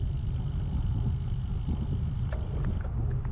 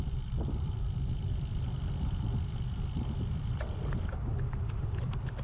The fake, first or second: second